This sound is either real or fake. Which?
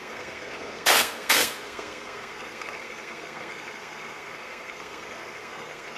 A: fake